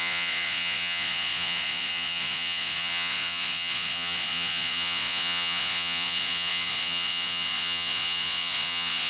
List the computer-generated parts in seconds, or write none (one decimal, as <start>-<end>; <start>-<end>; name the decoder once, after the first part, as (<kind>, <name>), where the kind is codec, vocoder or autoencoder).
0.0-9.1 (vocoder, Vocos)